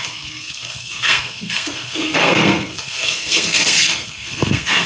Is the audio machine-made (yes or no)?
yes